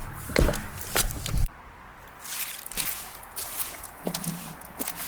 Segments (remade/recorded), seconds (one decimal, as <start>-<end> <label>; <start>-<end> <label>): 0.0-2.8 recorded; 2.8-5.1 remade

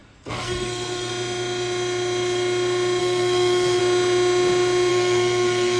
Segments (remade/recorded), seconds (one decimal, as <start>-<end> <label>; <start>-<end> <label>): 0.0-1.1 remade; 1.1-3.0 recorded; 3.0-3.8 remade; 3.8-4.9 recorded; 4.9-5.8 remade